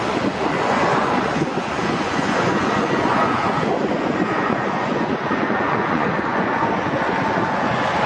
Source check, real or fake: fake